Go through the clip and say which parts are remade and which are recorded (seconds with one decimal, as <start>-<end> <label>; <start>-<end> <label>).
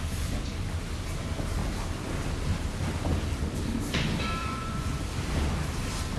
0.0-4.4 recorded; 4.4-5.0 remade; 5.0-6.2 recorded